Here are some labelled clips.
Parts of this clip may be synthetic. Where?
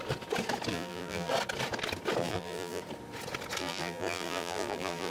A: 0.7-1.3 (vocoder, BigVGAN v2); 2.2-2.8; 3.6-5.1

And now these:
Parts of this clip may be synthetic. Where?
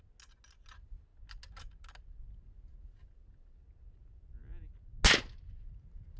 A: none